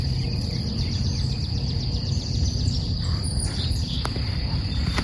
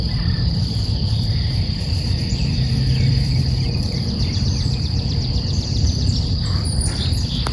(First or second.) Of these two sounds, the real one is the first